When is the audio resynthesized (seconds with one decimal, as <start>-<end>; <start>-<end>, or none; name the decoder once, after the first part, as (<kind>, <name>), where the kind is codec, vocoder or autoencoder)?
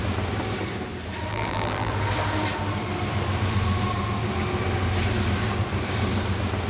1.3-1.9 (vocoder, BigVGAN v2)